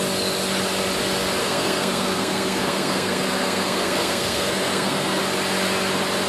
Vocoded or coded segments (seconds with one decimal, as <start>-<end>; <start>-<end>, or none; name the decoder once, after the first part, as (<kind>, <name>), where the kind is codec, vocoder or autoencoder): 1.4-5.2 (codec, SNAC)